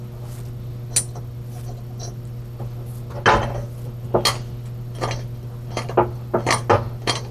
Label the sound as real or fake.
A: real